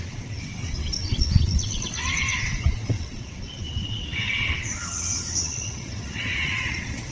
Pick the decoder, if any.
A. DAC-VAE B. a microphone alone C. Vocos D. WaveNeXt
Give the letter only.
D